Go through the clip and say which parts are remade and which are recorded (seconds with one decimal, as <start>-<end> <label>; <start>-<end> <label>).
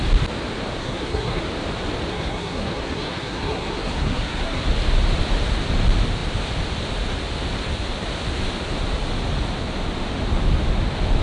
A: 0.0-0.8 recorded; 0.8-1.4 remade; 1.4-2.1 recorded; 2.1-4.6 remade; 4.6-11.2 recorded